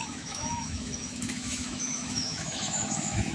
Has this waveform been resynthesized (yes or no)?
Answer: yes